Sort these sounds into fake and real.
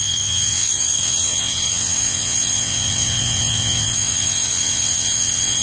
fake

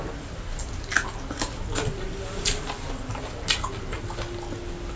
real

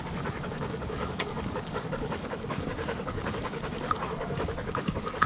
fake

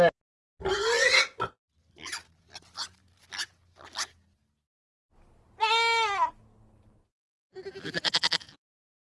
real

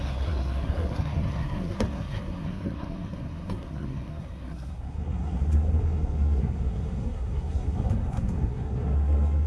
fake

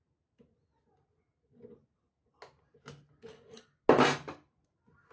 real